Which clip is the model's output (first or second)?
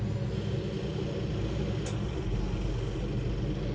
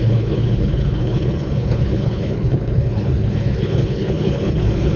second